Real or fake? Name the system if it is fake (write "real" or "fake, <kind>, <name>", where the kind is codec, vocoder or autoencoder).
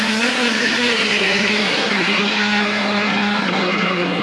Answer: fake, codec, SNAC